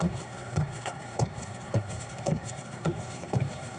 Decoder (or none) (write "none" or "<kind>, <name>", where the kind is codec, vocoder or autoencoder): codec, SNAC